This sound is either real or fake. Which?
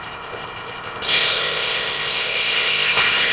fake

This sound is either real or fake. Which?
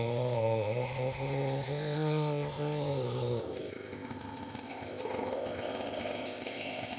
fake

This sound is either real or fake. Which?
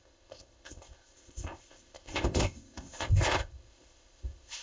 fake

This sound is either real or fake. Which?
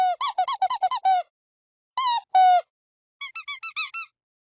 real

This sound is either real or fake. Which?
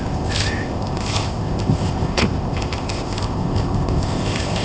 fake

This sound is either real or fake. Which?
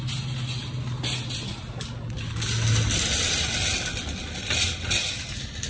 real